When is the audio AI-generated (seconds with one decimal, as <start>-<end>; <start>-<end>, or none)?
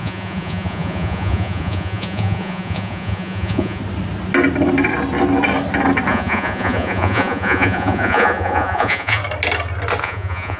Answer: 0.0-3.8; 6.1-9.2; 10.0-10.6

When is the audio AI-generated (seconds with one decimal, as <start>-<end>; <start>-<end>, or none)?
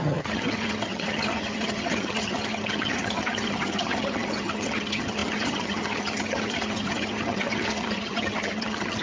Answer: 0.0-9.0